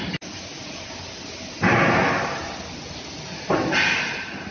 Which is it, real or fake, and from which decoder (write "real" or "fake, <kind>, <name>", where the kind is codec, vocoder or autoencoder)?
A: real